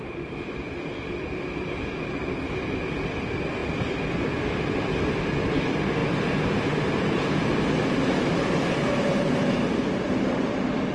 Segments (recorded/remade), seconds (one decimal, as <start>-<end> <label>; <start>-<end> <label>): 0.0-10.9 recorded